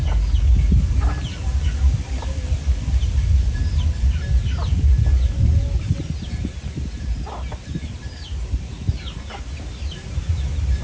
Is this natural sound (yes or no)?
yes